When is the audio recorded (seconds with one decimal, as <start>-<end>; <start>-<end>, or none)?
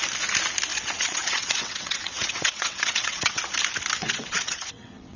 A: 0.0-0.7; 3.4-4.0